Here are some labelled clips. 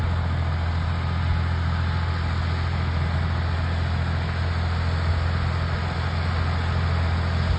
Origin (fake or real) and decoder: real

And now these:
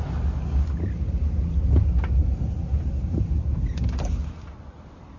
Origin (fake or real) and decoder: real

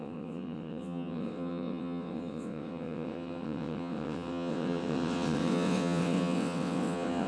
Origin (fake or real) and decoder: fake, vocoder, WaveNeXt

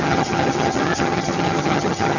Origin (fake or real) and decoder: fake, vocoder, HiFi-GAN